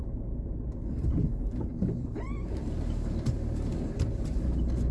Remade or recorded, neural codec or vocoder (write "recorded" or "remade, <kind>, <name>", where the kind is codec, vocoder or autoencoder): recorded